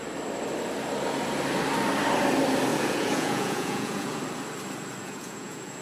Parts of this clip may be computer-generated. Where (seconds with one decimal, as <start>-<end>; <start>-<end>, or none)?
2.7-4.2; 5.0-5.8